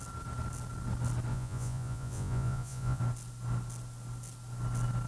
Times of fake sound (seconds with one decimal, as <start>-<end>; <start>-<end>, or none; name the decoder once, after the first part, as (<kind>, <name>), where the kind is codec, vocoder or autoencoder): 1.3-3.0 (vocoder, Vocos)